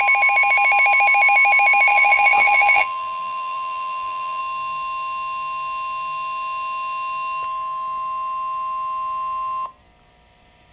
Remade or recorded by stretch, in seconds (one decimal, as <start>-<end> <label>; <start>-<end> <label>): 0.0-1.9 recorded; 1.9-4.4 remade; 4.4-10.7 recorded